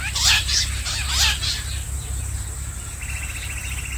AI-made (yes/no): no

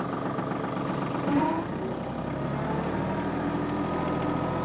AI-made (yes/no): no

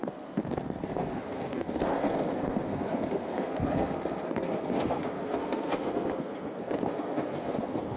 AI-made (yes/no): yes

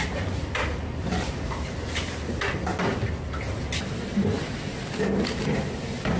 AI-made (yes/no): no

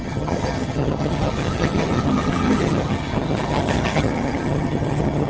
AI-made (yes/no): yes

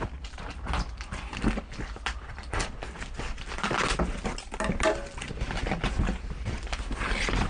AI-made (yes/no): no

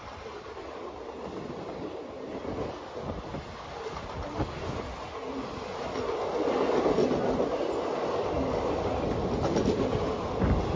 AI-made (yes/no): no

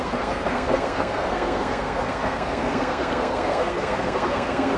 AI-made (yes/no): yes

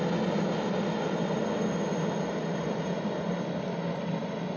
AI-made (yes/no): no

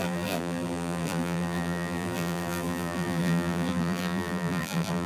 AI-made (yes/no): yes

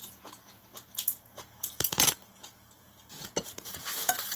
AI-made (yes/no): yes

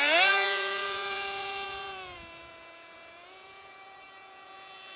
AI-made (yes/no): yes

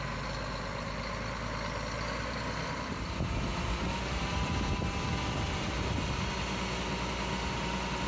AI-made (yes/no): no